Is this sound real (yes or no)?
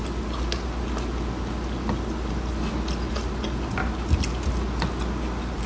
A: yes